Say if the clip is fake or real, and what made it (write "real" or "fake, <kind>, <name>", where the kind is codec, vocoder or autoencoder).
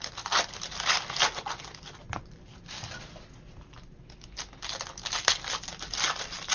real